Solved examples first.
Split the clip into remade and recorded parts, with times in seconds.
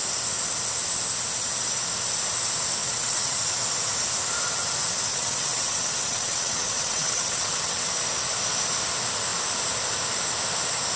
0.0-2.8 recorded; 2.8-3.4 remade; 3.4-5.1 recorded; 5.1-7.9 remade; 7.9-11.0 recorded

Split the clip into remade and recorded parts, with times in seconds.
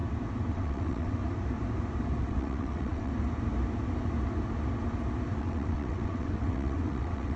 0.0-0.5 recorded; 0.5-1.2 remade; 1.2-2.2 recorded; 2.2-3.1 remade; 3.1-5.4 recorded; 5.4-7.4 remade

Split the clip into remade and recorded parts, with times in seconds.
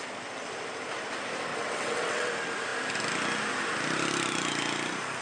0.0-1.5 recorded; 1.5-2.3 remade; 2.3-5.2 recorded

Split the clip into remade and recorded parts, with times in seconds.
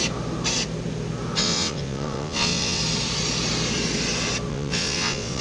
0.0-1.4 recorded; 1.4-2.8 remade; 2.8-4.5 recorded; 4.5-5.4 remade